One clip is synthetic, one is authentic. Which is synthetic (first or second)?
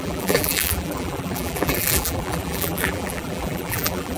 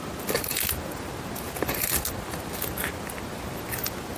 first